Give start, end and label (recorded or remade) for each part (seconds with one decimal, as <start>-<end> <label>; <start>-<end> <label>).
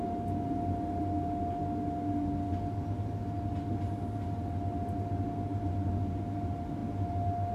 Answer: 0.0-7.5 recorded